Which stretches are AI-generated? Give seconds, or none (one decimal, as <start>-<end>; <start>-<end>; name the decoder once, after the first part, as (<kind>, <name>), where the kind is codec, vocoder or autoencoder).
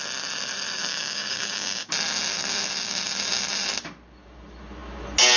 0.9-1.9 (codec, DAC)